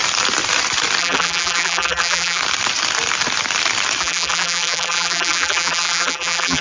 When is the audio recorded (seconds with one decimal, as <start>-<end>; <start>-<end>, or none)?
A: 0.0-1.0; 2.4-4.0